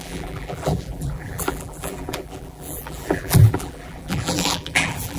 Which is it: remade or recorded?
remade